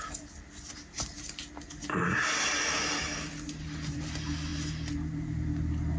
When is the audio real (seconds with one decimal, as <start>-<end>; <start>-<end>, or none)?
0.0-6.0